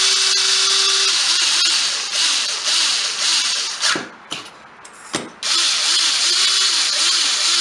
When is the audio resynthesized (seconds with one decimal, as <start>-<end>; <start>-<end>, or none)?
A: 3.3-4.5